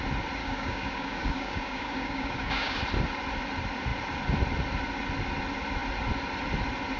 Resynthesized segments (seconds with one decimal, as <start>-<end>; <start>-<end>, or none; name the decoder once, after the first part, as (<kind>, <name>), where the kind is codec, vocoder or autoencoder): 0.4-2.8 (codec, DAC)